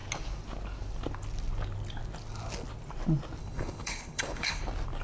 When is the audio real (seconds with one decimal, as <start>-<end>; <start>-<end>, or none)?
0.0-3.4; 4.6-5.0